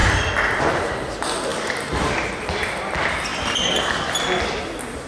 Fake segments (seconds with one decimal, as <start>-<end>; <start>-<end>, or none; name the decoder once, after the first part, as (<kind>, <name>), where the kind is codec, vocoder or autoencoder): 1.5-2.3 (vocoder, BigVGAN v2)